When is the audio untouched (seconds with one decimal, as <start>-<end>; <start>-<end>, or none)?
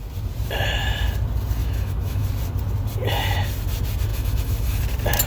0.0-1.6; 2.3-4.1; 4.8-5.3